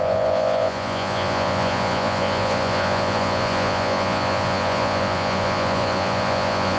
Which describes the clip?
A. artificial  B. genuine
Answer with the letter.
A